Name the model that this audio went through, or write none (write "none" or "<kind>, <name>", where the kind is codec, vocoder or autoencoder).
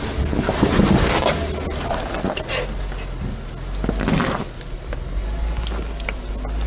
none